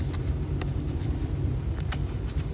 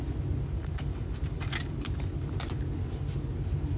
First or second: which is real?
second